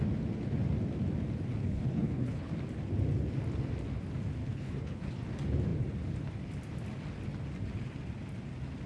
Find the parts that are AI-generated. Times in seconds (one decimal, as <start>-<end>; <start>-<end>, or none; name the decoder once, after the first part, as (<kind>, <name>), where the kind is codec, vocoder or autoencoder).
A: 1.6-2.5 (codec, HILCodec); 4.4-5.2